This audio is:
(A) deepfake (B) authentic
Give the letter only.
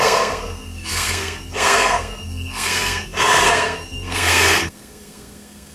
A